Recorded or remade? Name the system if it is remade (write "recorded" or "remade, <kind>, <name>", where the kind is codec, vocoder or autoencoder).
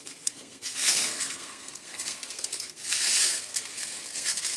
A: remade, codec, SNAC